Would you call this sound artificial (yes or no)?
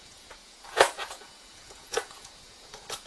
yes